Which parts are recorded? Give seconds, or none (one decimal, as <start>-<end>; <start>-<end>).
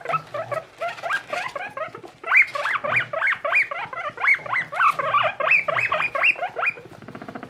0.0-7.5